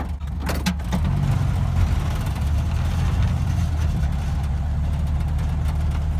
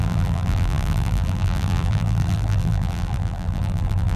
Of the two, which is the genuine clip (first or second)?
first